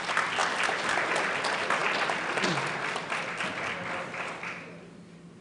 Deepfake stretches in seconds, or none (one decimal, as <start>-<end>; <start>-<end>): none